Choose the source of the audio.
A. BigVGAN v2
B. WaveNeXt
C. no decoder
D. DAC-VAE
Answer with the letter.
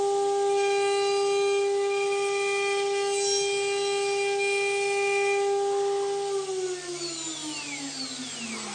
C